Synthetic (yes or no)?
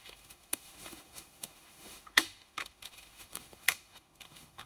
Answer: yes